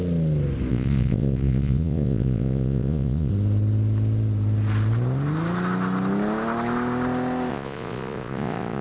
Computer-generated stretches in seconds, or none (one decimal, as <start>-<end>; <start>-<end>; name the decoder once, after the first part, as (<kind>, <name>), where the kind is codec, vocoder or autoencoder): 0.7-3.3 (vocoder, Vocos); 7.5-8.8